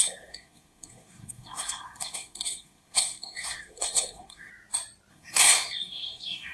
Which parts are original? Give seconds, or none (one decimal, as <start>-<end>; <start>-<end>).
4.5-5.1